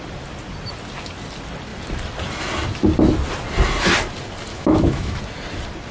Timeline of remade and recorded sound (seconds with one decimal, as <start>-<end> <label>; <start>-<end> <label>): 0.0-4.5 recorded; 4.5-5.2 remade; 5.2-5.9 recorded